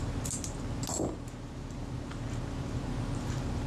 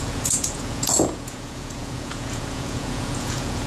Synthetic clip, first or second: second